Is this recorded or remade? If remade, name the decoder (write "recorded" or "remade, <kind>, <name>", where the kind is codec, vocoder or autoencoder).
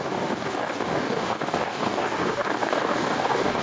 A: remade, codec, DAC